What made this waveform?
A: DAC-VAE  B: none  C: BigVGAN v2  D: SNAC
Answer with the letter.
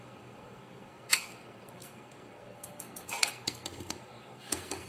D